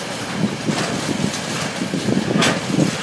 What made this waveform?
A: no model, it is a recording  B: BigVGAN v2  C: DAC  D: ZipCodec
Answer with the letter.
A